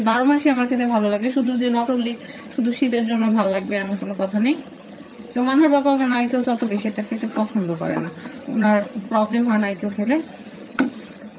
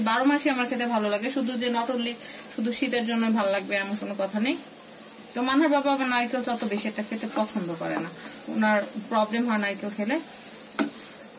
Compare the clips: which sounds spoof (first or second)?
first